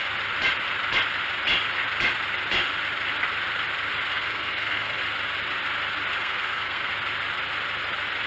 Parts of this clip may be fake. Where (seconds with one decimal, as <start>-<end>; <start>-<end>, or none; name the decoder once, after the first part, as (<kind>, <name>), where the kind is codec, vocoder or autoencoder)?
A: 4.1-5.0 (codec, SNAC); 6.2-6.9

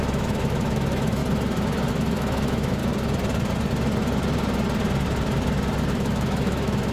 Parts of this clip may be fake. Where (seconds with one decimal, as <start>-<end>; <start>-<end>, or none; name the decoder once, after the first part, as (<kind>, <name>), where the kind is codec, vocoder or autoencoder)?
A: 0.0-1.2 (autoencoder, DAC-VAE); 1.9-2.8; 5.9-6.9